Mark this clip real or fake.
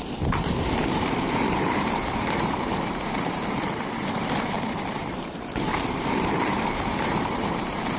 fake